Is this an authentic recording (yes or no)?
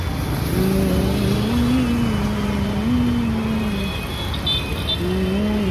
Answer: yes